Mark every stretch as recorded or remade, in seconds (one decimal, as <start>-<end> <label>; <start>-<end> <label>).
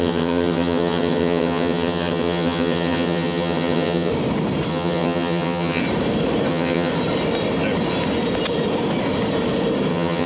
0.0-4.1 remade; 4.1-4.7 recorded; 4.7-5.8 remade; 5.8-6.5 recorded; 6.5-6.9 remade; 6.9-9.9 recorded; 9.9-10.3 remade